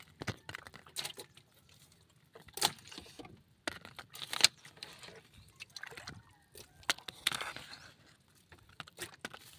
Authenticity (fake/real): real